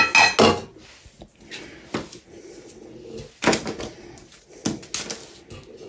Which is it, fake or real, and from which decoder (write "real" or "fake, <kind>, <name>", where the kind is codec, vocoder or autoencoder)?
real